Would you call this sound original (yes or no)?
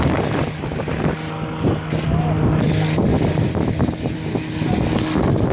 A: yes